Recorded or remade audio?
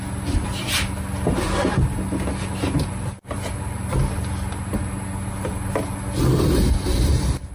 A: recorded